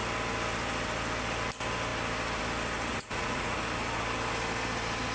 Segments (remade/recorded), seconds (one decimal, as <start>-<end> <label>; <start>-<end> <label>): 0.0-2.9 recorded; 2.9-3.6 remade; 3.6-5.1 recorded